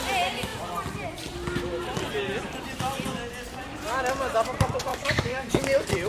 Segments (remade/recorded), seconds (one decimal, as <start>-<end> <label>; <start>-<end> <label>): 0.0-4.9 recorded; 4.9-5.5 remade; 5.5-6.1 recorded